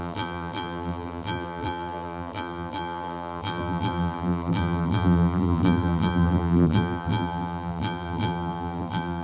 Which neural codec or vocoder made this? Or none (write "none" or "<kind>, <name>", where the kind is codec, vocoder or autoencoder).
vocoder, BigVGAN v2